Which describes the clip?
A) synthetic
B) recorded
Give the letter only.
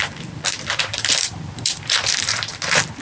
A